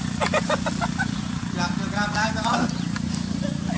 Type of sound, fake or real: real